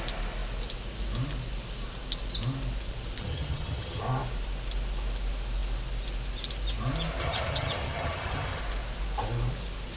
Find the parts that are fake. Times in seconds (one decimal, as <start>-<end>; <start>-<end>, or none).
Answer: 3.2-4.0; 7.2-8.6